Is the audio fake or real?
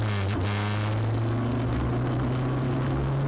real